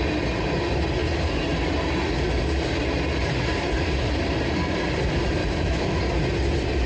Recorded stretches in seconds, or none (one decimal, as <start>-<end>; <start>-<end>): 0.0-5.4; 6.0-6.9